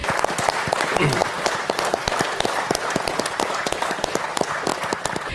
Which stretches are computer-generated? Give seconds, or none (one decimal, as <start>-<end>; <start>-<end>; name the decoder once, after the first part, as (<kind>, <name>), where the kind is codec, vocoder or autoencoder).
none